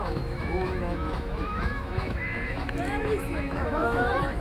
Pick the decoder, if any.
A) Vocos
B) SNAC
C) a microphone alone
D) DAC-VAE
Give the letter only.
D